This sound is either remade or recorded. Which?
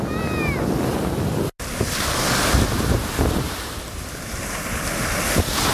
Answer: recorded